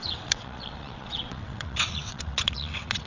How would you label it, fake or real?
fake